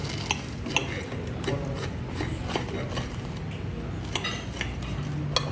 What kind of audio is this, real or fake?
real